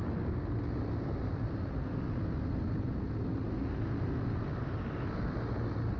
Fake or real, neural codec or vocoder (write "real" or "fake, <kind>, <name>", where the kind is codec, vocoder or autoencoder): real